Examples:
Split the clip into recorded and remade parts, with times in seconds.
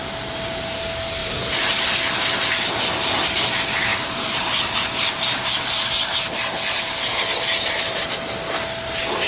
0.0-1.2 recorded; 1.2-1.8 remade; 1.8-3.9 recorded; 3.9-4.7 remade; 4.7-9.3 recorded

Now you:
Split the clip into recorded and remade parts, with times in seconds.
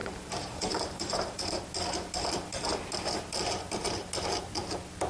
0.0-1.6 remade; 1.6-5.1 recorded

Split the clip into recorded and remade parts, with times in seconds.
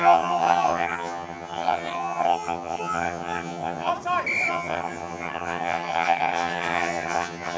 0.0-3.9 remade; 3.9-4.5 recorded; 4.5-7.6 remade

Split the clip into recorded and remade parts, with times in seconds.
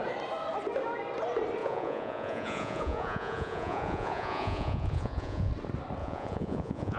0.0-1.6 recorded; 1.6-5.5 remade; 5.5-6.0 recorded; 6.0-7.0 remade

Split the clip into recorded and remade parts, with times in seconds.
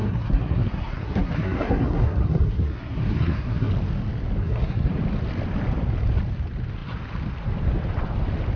0.0-3.7 remade; 3.7-4.4 recorded; 4.4-5.0 remade; 5.0-8.6 recorded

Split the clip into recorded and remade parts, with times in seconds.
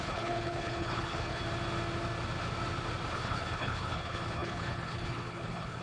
0.0-1.4 remade; 1.4-3.1 recorded; 3.1-5.8 remade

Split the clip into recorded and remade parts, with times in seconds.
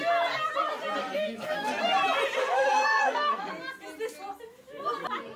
0.0-1.0 recorded; 1.0-1.8 remade; 1.8-2.4 recorded; 2.4-3.5 remade; 3.5-5.4 recorded